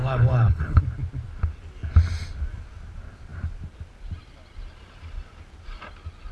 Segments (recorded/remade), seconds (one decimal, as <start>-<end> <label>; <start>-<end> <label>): 0.0-0.8 remade; 0.8-6.3 recorded